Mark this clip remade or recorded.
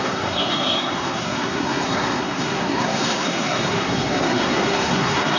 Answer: remade